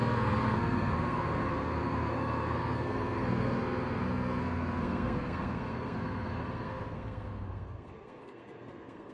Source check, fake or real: fake